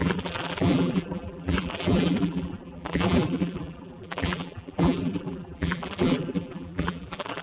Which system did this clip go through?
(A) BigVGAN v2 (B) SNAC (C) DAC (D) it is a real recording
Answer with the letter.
A